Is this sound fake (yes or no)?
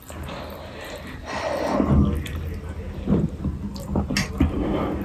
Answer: no